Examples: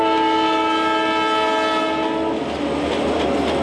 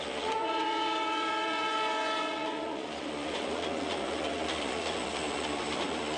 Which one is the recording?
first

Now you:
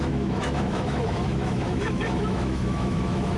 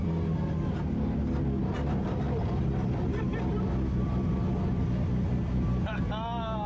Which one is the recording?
second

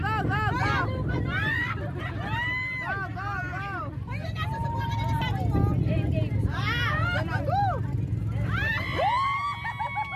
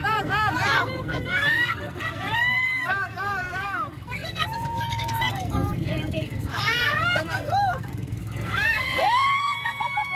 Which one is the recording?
first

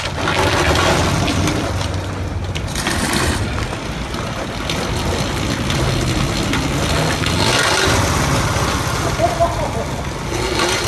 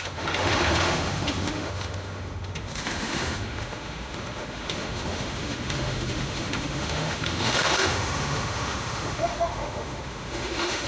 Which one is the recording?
first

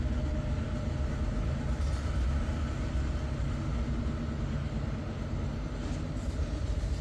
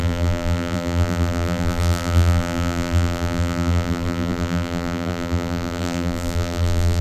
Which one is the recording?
first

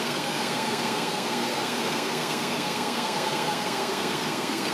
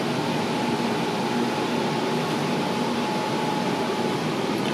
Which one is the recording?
second